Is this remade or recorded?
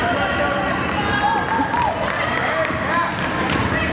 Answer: recorded